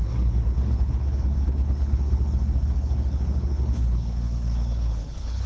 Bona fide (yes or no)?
no